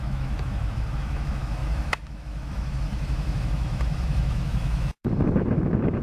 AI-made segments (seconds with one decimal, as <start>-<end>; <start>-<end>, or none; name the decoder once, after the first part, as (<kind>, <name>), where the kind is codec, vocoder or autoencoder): 0.0-6.0 (autoencoder, DAC-VAE)